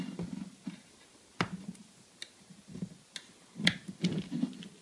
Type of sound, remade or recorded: recorded